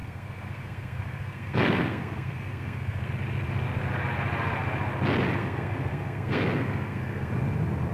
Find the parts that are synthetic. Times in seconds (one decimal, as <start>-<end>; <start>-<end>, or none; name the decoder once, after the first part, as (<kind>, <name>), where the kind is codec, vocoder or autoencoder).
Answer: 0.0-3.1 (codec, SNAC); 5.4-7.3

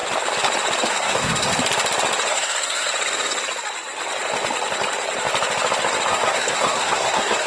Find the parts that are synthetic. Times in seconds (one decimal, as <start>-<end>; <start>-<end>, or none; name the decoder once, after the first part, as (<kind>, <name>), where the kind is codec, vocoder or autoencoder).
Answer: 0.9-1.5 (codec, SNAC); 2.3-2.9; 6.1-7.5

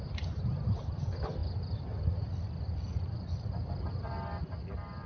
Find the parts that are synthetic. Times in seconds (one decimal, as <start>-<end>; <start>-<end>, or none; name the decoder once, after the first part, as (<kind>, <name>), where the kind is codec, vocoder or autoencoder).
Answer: none

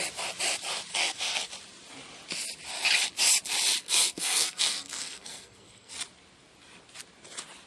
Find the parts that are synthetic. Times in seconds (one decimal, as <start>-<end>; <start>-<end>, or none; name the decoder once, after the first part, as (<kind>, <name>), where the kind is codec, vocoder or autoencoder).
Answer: 0.9-1.5 (codec, SNAC); 3.8-5.9

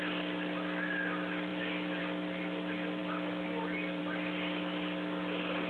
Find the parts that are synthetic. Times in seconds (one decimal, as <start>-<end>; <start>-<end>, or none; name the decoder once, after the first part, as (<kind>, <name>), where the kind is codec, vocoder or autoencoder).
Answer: none